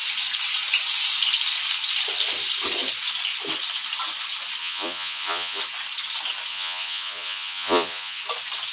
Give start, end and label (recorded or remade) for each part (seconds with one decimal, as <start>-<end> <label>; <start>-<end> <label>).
0.0-4.6 recorded; 4.6-5.6 remade; 5.6-6.5 recorded; 6.5-8.2 remade; 8.2-8.7 recorded